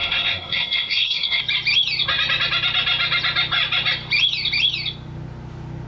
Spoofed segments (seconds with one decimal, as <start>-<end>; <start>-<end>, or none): 0.0-1.4

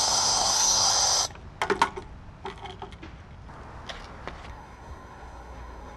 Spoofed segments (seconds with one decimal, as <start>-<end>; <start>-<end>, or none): 0.0-0.9; 4.5-6.0

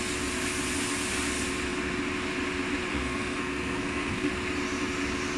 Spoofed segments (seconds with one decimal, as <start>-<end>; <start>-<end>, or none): 2.9-4.3

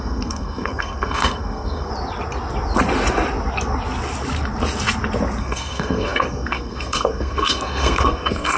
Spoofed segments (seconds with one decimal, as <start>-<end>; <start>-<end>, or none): 0.0-1.9; 5.4-8.6

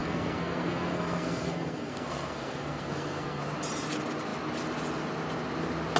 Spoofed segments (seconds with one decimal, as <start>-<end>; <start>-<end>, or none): 0.0-3.4

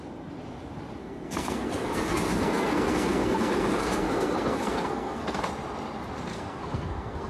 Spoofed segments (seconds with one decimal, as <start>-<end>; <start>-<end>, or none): 1.0-5.4; 6.3-7.3